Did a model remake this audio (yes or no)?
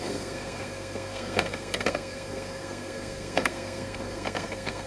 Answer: yes